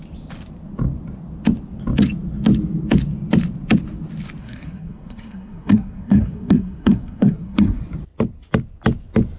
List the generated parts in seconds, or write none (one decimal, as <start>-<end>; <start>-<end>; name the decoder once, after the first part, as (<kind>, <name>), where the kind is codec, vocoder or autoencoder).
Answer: 4.4-7.8 (codec, SNAC)